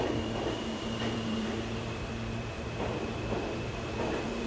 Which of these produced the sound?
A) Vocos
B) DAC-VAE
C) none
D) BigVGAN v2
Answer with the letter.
D